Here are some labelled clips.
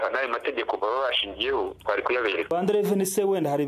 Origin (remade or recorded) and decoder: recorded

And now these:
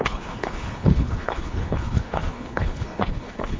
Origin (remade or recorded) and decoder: remade, codec, HILCodec